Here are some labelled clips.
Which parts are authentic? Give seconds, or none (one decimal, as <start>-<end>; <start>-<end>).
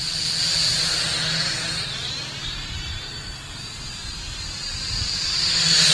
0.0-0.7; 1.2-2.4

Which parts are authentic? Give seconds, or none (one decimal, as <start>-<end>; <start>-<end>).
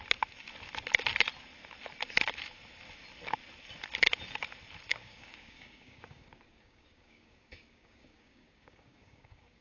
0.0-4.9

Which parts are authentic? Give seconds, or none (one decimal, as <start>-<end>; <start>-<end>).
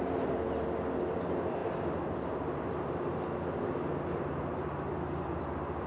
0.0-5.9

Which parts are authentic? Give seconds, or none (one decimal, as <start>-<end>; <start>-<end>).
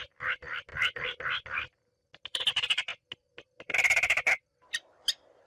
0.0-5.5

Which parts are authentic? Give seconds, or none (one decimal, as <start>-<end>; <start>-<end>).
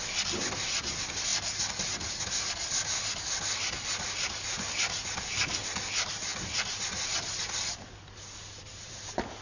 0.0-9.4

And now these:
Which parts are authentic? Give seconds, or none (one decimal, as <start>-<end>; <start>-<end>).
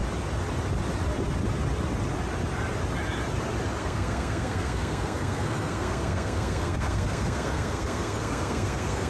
0.0-3.8